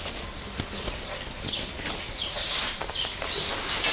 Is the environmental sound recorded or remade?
recorded